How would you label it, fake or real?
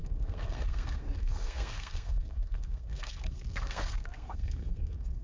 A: fake